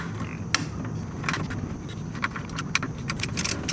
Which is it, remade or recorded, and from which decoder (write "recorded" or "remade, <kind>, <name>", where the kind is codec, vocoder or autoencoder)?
recorded